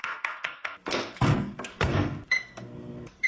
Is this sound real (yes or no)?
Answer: no